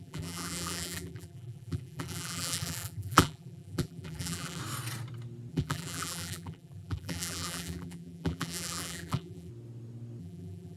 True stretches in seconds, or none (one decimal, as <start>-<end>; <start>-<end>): 4.6-5.5; 9.5-10.2

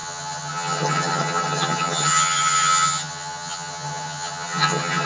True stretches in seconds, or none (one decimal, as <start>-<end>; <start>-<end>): none

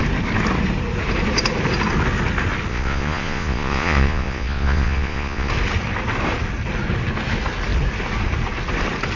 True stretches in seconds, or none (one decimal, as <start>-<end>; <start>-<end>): 0.0-2.7; 5.5-9.2

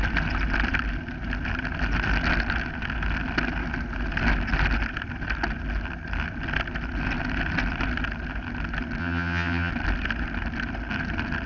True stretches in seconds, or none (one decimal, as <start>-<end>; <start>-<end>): 0.0-9.0; 9.7-11.5

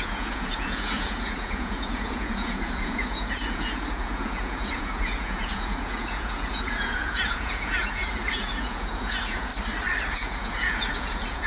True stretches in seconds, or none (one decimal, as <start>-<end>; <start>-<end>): 9.5-10.1